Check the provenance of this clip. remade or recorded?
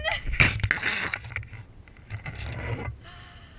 recorded